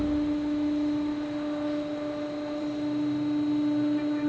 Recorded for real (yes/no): yes